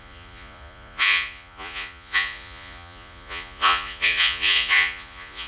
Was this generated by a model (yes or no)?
yes